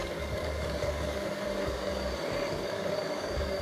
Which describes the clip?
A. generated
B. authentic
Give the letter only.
A